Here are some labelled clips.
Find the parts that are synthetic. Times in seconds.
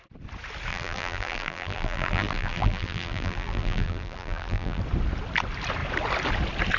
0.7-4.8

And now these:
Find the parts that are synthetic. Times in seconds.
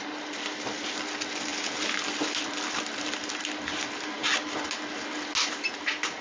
0.0-1.5; 2.7-4.2; 5.8-6.2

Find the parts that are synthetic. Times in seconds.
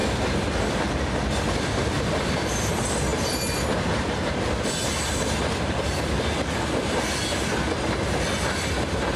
none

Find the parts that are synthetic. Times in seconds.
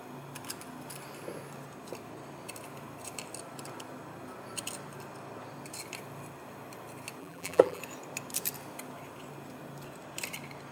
7.2-7.8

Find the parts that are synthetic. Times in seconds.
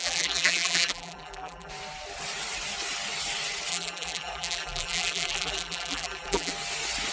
0.0-1.7; 3.7-6.5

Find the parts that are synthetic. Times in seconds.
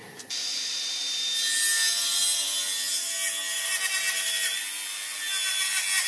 none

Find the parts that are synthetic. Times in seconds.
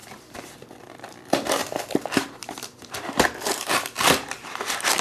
0.0-1.2; 1.6-4.6